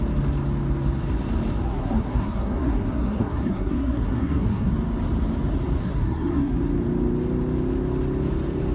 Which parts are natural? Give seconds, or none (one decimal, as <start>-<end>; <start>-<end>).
0.0-1.7; 4.7-5.8; 6.6-8.7